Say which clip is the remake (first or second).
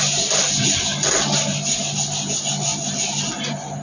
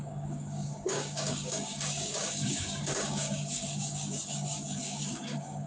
second